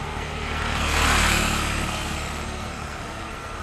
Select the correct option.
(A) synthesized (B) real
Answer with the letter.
A